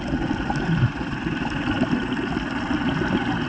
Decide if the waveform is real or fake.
real